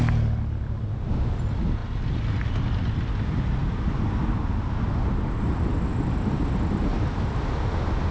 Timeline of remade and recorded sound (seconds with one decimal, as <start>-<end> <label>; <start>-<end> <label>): 0.0-0.9 recorded; 0.9-1.4 remade; 1.4-8.1 recorded